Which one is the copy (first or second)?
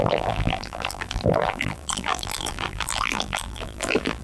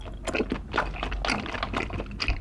first